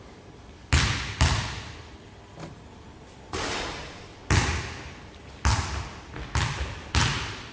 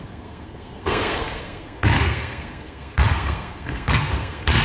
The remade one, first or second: second